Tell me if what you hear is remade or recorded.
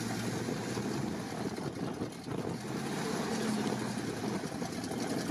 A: recorded